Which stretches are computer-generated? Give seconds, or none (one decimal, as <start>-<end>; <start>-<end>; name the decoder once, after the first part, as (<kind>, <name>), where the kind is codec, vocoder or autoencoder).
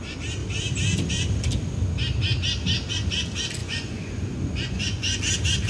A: 3.6-5.2 (vocoder, Vocos)